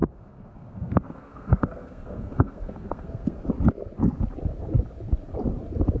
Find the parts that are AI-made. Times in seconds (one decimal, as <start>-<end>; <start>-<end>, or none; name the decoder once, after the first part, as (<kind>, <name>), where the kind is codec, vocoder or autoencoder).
0.0-3.5 (codec, SNAC)